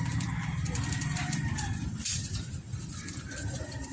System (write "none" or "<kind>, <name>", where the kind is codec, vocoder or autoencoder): vocoder, BigVGAN v2